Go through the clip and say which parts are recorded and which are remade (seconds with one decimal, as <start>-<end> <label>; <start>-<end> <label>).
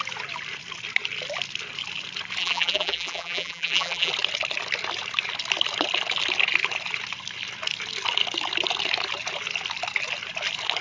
0.0-2.4 recorded; 2.4-4.1 remade; 4.1-10.8 recorded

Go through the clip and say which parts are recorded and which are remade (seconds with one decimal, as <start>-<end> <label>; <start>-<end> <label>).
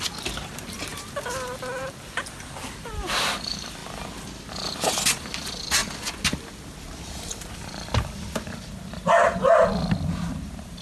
0.0-3.8 remade; 3.8-4.6 recorded; 4.6-5.8 remade; 5.8-7.0 recorded; 7.0-10.8 remade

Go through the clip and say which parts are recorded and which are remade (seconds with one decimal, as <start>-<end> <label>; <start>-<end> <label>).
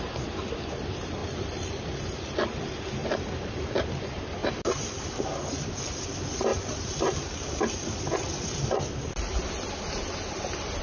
0.0-1.2 recorded; 1.2-1.7 remade; 1.7-3.0 recorded; 3.0-3.7 remade; 3.7-10.8 recorded